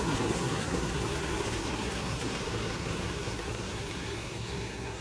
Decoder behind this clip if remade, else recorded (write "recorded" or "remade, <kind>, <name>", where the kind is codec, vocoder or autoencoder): remade, codec, SNAC